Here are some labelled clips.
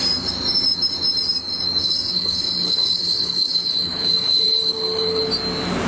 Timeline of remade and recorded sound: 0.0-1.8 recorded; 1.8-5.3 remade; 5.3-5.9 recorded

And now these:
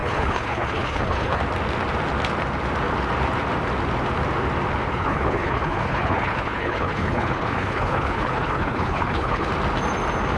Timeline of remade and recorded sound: 0.0-1.4 remade; 1.4-4.9 recorded; 4.9-9.5 remade; 9.5-10.4 recorded

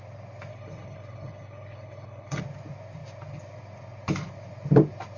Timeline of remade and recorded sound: 0.0-0.5 recorded; 0.5-2.4 remade; 2.4-5.2 recorded